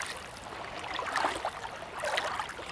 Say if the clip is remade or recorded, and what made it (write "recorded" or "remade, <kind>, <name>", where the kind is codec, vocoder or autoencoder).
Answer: recorded